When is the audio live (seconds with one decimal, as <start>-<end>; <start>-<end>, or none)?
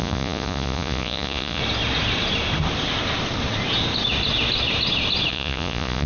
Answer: 1.6-5.3